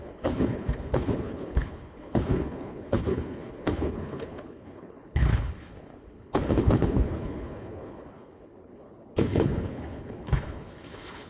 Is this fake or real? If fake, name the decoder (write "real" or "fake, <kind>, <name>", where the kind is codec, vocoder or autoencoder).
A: fake, codec, HILCodec